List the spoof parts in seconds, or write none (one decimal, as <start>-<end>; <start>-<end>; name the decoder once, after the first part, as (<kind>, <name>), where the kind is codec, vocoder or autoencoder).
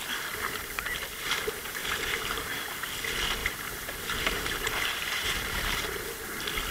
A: 1.8-2.5 (vocoder, BigVGAN v2); 3.4-5.8